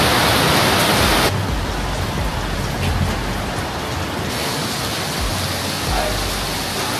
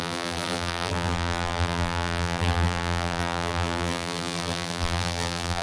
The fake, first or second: second